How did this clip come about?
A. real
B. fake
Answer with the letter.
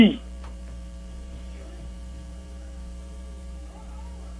B